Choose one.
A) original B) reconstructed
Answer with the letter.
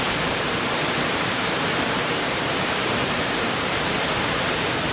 B